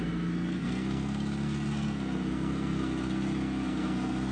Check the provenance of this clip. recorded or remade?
remade